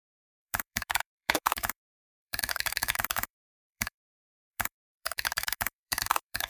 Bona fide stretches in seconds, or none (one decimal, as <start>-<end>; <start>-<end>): none